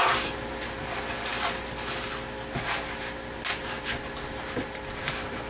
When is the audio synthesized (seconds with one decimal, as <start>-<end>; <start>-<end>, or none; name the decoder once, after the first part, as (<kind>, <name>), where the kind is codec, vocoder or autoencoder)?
none